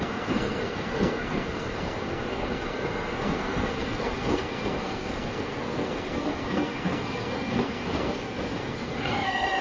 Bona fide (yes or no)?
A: no